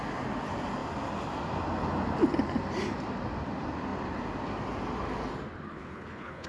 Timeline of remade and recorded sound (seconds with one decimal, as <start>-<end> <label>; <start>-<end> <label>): 0.0-5.7 recorded; 5.7-6.5 remade